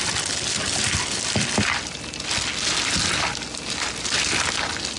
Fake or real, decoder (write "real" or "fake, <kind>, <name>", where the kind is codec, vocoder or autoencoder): real